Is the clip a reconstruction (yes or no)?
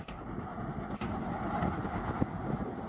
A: no